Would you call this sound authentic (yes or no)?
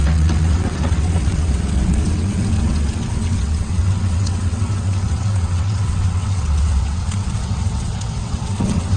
no